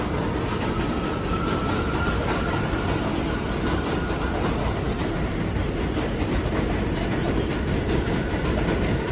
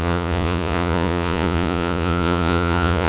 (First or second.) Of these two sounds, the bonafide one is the first